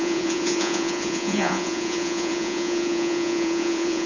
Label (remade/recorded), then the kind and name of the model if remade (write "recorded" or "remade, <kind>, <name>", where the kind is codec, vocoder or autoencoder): remade, vocoder, Vocos